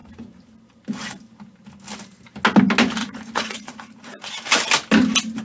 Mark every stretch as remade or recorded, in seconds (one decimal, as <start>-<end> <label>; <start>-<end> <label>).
0.0-3.0 recorded; 3.0-4.3 remade; 4.3-5.4 recorded